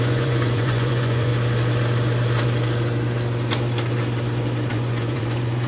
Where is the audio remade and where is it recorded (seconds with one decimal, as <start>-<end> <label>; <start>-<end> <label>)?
0.0-1.3 remade; 1.3-4.7 recorded; 4.7-5.7 remade

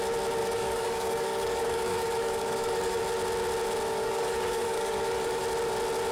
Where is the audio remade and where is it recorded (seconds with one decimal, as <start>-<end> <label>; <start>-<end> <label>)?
0.0-0.4 recorded; 0.4-3.0 remade; 3.0-4.0 recorded; 4.0-5.4 remade; 5.4-6.1 recorded

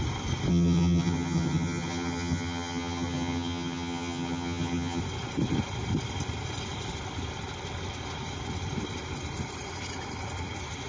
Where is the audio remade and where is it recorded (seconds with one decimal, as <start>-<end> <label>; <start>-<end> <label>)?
0.0-0.5 recorded; 0.5-5.0 remade; 5.0-10.9 recorded

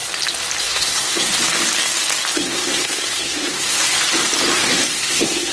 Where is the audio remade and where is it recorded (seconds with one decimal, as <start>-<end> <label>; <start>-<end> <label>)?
0.0-0.6 recorded; 0.6-1.3 remade; 1.3-2.3 recorded; 2.3-3.8 remade; 3.8-4.5 recorded; 4.5-5.5 remade